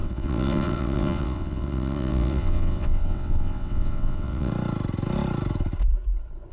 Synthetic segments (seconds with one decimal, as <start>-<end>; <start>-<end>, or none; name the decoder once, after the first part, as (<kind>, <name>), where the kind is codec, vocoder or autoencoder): 0.0-4.5 (vocoder, WaveNeXt)